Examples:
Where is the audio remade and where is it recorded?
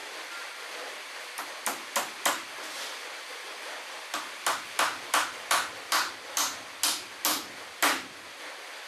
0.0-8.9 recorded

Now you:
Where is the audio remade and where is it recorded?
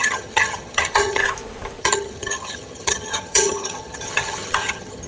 0.0-1.2 remade; 1.2-1.8 recorded; 1.8-5.1 remade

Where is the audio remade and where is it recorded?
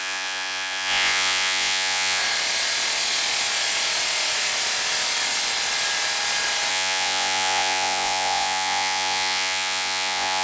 0.0-2.2 remade; 2.2-6.7 recorded; 6.7-10.4 remade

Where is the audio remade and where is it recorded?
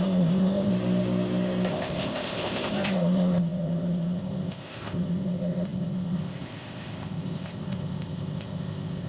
0.0-0.7 remade; 0.7-1.7 recorded; 1.7-9.1 remade